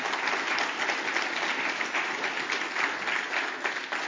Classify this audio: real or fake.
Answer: real